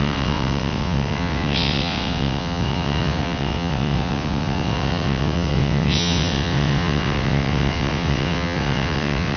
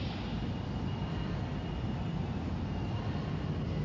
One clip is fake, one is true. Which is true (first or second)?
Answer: second